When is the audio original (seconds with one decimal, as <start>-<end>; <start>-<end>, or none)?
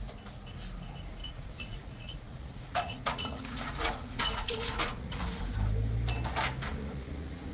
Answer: 0.0-1.2; 5.4-6.8